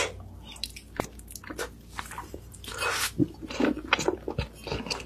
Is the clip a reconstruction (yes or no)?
no